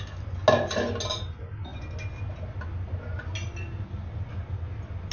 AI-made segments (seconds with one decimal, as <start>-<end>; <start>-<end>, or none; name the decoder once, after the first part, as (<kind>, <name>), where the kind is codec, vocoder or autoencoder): none